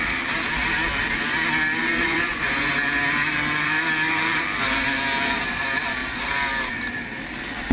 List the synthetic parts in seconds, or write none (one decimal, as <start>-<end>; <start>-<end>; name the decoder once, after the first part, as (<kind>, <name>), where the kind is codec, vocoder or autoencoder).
1.8-2.7 (vocoder, Vocos)